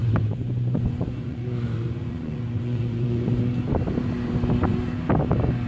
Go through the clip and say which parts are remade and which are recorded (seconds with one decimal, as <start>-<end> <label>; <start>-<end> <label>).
0.0-3.4 remade; 3.4-5.7 recorded